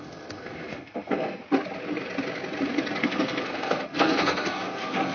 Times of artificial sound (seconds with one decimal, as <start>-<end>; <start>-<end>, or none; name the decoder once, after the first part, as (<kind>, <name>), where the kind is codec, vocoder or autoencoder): 0.0-1.4 (codec, SNAC); 3.0-5.1